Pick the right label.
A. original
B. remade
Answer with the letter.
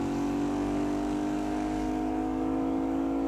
B